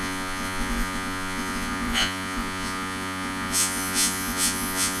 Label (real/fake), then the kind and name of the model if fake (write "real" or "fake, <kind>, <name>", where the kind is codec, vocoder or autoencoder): fake, vocoder, Vocos